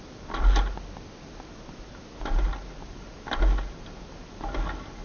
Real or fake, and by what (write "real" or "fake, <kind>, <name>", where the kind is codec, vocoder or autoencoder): real